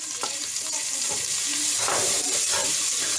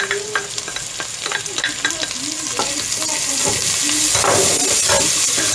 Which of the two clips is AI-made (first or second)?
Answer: first